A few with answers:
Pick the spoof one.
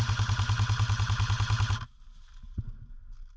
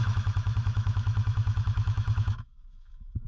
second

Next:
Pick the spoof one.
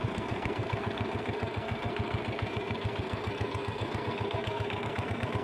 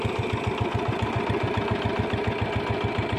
first